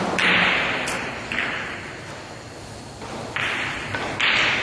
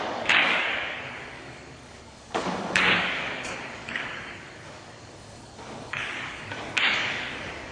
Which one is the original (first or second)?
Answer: first